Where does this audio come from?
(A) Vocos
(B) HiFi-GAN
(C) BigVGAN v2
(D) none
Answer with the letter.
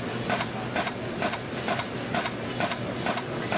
C